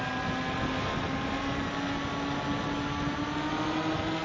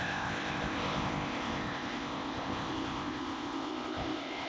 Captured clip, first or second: first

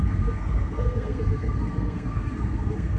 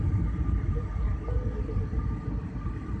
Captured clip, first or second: second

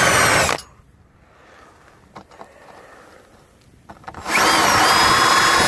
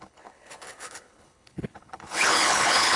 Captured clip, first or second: first